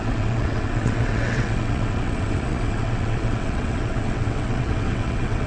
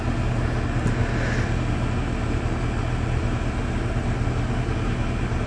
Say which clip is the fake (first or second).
first